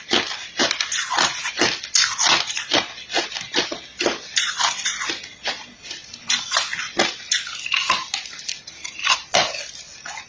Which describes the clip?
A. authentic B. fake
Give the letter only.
A